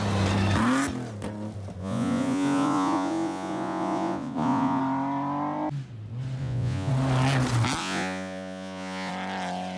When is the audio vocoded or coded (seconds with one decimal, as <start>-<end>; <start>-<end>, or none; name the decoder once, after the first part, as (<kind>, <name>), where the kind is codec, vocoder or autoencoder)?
1.8-4.8 (vocoder, Vocos); 6.4-6.9; 7.8-9.1